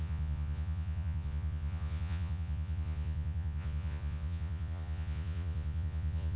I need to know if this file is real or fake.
fake